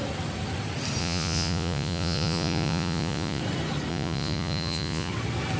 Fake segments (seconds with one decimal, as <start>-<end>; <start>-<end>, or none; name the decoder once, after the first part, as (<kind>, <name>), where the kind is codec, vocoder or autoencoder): 1.0-3.4 (vocoder, Vocos); 3.9-5.1